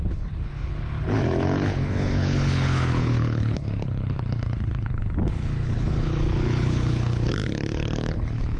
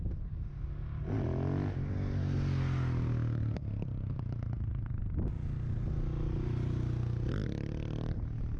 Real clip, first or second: second